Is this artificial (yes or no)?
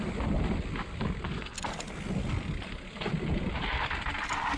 no